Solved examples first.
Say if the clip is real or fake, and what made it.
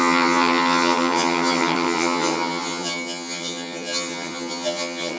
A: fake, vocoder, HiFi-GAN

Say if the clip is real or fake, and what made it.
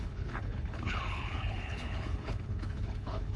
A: fake, codec, HILCodec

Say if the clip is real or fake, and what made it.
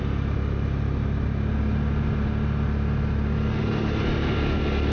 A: real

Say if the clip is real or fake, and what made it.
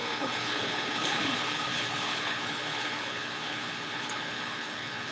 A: fake, codec, HILCodec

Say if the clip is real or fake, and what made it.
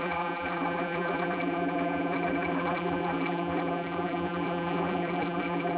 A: fake, vocoder, BigVGAN v2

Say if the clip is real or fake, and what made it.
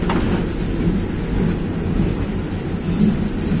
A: real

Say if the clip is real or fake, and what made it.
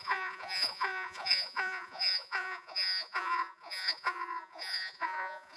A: fake, vocoder, Vocos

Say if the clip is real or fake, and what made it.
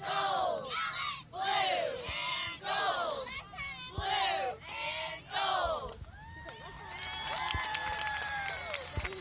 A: real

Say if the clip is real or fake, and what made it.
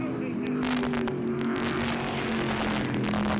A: real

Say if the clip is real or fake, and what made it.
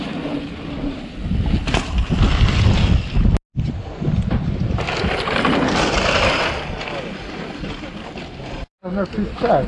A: real